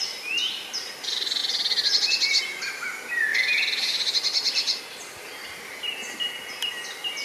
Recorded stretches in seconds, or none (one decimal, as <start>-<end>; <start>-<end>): 0.0-7.2